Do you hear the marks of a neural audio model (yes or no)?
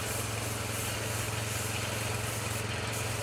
no